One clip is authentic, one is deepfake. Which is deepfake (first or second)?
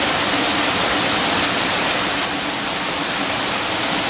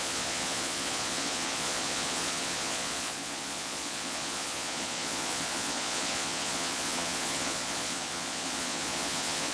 second